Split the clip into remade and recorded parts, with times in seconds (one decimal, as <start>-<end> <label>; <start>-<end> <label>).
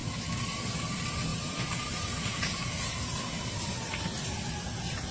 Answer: 0.0-1.3 recorded; 1.3-1.9 remade; 1.9-2.3 recorded; 2.3-3.2 remade; 3.2-5.1 recorded